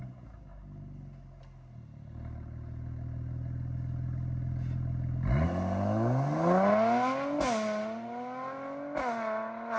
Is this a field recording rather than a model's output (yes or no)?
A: yes